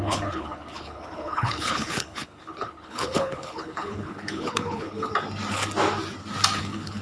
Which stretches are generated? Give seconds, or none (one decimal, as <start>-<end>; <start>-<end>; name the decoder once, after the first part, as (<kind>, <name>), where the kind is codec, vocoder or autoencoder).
0.0-5.1 (codec, HILCodec); 6.6-7.0